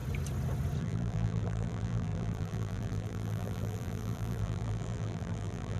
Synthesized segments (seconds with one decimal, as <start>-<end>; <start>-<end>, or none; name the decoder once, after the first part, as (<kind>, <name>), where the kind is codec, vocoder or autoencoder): 0.8-5.8 (vocoder, BigVGAN v2)